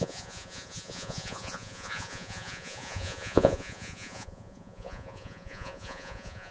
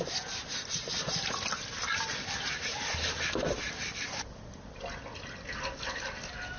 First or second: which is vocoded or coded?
first